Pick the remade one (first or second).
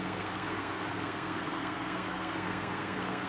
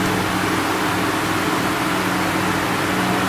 first